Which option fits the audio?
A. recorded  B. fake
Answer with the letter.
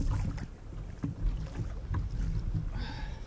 A